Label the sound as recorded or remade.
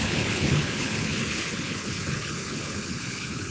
remade